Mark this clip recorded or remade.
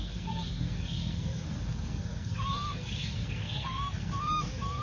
remade